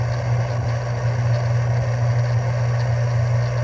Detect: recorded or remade recorded